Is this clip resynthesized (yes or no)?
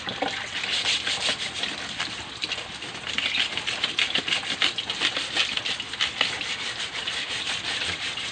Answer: no